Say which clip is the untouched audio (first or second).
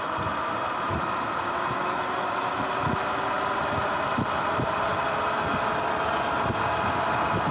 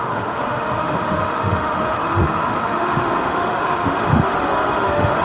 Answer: first